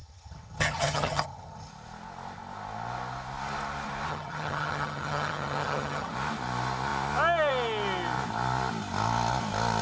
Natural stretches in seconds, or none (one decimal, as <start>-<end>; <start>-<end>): 1.7-4.1; 6.1-9.8